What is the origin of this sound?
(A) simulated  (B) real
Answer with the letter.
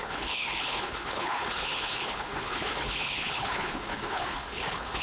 A